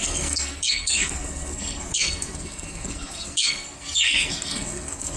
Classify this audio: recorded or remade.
remade